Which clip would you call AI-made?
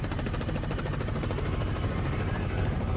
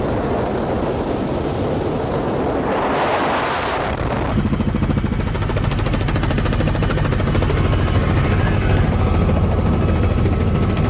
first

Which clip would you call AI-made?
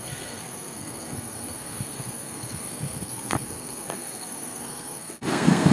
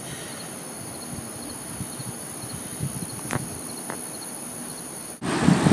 first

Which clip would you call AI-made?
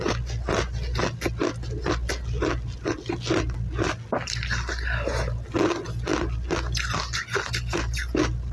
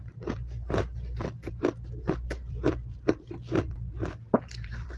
second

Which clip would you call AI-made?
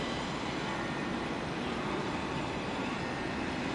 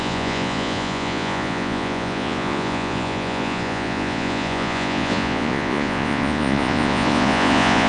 second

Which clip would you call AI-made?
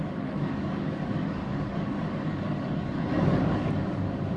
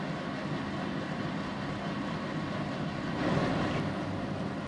first